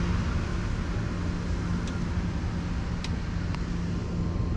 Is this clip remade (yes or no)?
no